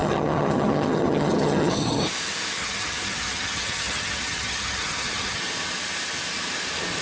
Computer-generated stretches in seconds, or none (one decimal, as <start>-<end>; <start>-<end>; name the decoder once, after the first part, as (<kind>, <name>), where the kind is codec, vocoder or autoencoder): 0.0-2.0 (vocoder, HiFi-GAN); 2.6-5.4